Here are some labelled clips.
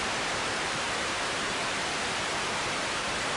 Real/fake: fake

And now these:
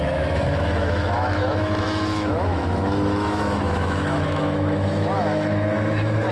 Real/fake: fake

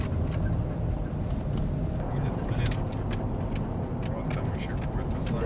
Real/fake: real